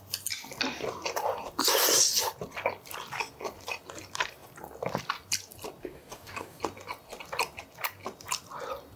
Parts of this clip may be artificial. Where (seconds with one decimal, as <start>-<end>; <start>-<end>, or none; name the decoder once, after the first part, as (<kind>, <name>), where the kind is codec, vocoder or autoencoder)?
5.8-6.6 (codec, DAC)